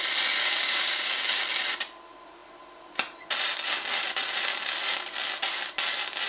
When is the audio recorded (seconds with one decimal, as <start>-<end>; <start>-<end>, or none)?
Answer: 0.0-0.4; 1.4-6.3